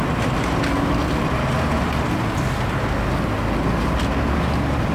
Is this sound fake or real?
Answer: real